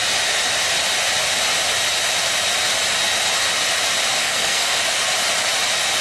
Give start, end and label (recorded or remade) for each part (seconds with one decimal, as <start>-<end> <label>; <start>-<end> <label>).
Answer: 0.0-4.2 recorded; 4.2-4.8 remade; 4.8-6.0 recorded